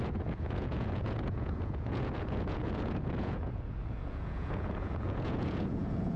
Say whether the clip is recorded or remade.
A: remade